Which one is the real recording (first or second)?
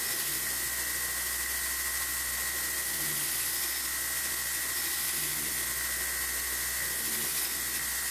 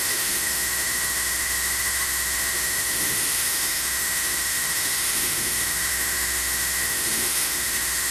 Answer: first